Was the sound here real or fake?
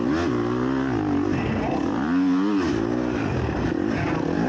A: real